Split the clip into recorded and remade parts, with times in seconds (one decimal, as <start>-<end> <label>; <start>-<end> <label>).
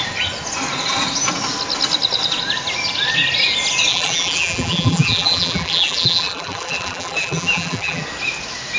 0.0-3.9 recorded; 3.9-8.0 remade; 8.0-8.8 recorded